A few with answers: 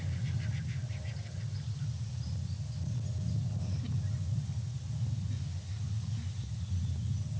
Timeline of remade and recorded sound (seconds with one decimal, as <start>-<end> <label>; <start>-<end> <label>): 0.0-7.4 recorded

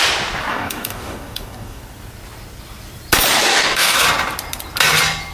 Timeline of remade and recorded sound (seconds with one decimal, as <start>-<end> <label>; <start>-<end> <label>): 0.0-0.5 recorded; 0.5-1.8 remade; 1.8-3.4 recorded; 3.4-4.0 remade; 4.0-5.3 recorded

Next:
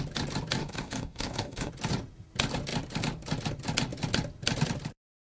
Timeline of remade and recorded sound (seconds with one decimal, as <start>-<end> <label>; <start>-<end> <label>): 0.0-0.6 recorded; 0.6-1.7 remade; 1.7-5.3 recorded

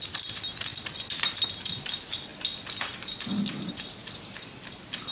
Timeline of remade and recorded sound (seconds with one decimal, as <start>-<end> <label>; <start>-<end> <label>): 0.0-5.1 recorded

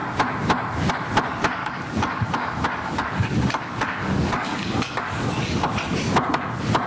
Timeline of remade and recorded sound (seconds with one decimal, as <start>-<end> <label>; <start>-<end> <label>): 0.0-1.6 recorded; 1.6-5.7 remade; 5.7-6.9 recorded